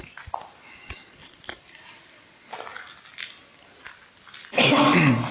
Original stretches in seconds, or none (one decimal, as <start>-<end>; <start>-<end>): 0.0-5.3